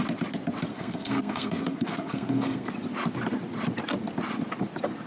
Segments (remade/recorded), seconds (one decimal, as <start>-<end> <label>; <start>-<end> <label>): 0.0-0.7 recorded; 0.7-2.7 remade; 2.7-5.1 recorded